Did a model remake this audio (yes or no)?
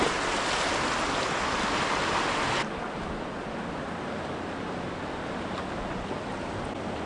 no